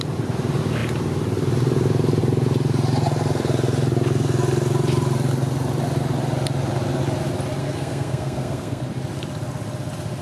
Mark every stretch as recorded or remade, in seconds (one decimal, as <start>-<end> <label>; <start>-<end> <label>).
0.0-7.6 recorded; 7.6-8.8 remade; 8.8-10.2 recorded

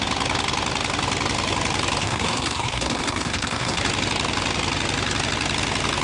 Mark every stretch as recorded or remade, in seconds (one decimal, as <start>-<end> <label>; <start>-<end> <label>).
0.0-2.0 recorded; 2.0-3.8 remade; 3.8-6.0 recorded

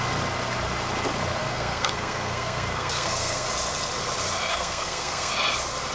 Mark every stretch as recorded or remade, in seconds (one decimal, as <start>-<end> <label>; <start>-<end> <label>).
0.0-1.4 recorded; 1.4-3.5 remade; 3.5-4.5 recorded; 4.5-5.3 remade; 5.3-5.9 recorded

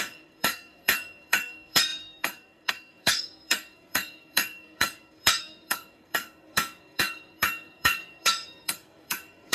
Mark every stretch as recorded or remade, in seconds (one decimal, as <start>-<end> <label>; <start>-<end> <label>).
0.0-9.5 remade